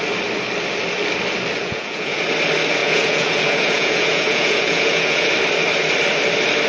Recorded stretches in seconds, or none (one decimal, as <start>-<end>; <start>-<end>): 0.0-1.6; 2.2-2.8; 5.3-6.7

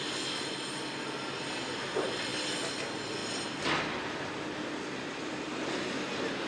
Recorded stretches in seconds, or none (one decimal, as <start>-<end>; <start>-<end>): 0.0-6.5

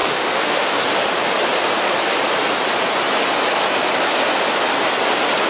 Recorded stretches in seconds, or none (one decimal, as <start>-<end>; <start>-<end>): 0.8-5.5

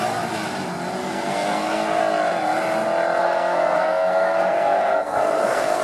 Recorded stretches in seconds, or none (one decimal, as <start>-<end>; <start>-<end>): 0.0-1.0; 2.0-3.2